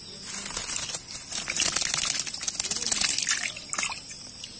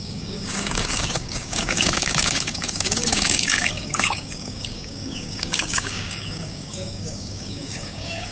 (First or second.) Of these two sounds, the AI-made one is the second